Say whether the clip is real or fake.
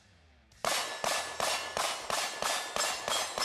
real